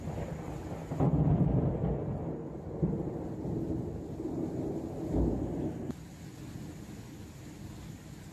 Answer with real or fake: real